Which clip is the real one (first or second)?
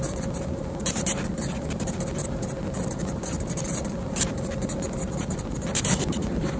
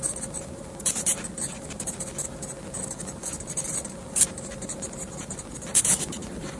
second